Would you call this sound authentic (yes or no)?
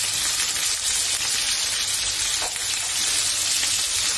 yes